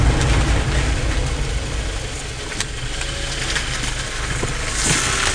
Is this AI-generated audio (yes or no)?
no